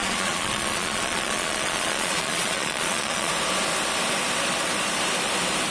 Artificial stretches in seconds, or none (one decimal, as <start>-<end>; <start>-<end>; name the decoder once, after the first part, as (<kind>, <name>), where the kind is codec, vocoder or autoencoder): 0.0-3.3 (vocoder, Vocos)